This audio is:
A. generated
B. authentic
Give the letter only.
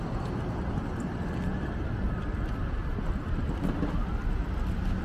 B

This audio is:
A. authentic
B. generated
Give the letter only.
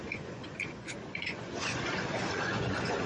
B